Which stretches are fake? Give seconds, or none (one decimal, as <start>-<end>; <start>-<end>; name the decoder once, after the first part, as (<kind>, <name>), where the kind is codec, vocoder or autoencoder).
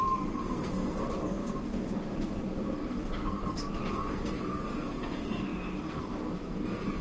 0.0-7.0 (codec, SNAC)